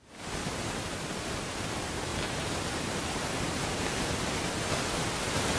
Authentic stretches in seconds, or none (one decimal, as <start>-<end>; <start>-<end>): 0.0-2.1; 4.2-5.6